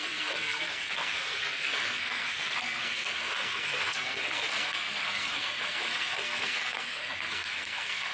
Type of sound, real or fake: fake